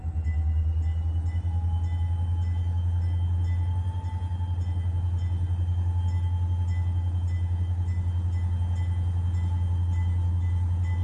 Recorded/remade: recorded